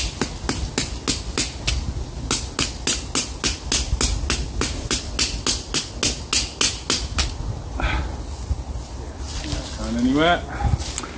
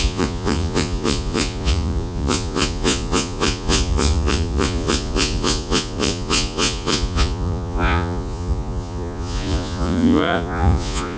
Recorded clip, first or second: first